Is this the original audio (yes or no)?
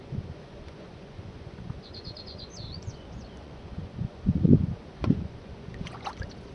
no